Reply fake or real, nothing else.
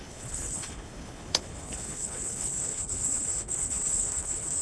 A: fake